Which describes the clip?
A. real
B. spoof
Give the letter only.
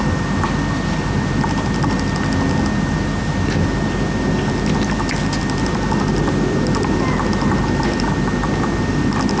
A